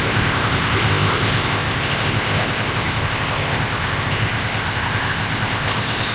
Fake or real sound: fake